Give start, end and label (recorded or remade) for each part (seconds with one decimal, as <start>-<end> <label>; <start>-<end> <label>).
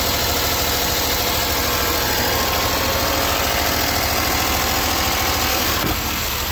0.0-5.5 recorded; 5.5-6.5 remade